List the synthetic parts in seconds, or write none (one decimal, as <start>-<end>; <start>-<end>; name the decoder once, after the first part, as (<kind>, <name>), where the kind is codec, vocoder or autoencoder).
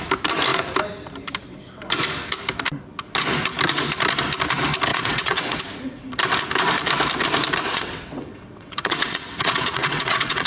4.9-5.6 (vocoder, WaveNeXt); 7.7-10.5